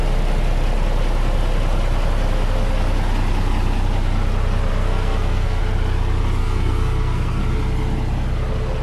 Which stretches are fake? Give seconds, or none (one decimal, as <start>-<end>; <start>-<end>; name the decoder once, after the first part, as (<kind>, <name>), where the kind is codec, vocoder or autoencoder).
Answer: 4.7-5.6 (codec, SNAC); 6.4-7.4